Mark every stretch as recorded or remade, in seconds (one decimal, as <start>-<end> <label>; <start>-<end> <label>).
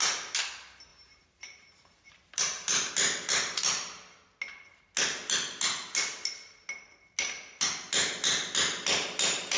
0.0-0.9 recorded; 0.9-2.9 remade; 2.9-9.6 recorded